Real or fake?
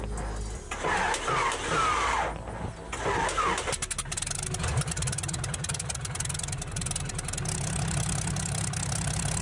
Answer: real